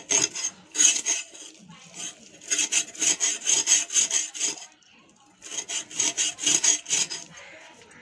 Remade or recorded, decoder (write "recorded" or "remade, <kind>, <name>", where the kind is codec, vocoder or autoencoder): recorded